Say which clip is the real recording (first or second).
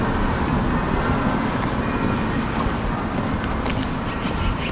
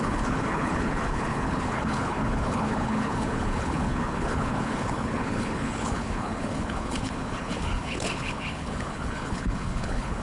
first